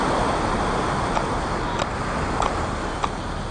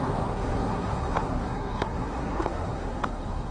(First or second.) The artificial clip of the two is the second